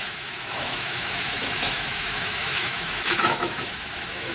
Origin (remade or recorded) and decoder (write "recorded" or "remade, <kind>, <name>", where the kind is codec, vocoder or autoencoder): remade, autoencoder, DAC-VAE